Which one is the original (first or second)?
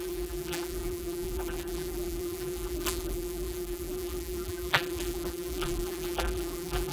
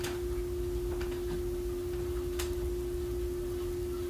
second